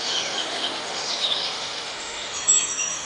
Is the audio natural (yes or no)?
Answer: no